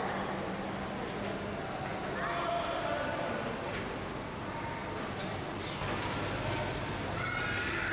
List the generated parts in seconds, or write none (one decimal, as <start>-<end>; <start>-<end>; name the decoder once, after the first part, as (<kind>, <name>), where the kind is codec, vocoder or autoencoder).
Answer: none